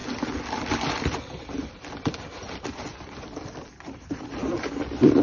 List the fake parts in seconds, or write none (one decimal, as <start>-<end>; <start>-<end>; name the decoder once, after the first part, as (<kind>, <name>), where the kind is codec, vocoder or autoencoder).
3.7-4.3 (vocoder, BigVGAN v2)